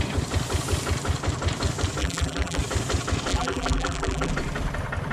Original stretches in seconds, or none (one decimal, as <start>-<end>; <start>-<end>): 0.0-2.0; 2.6-3.3; 4.3-5.1